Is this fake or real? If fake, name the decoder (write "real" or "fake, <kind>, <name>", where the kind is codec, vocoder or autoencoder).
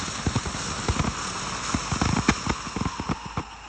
real